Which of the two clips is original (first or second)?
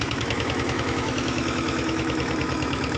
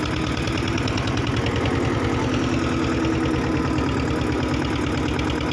second